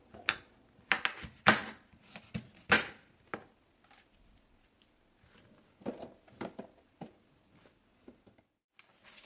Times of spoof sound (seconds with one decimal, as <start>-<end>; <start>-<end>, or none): none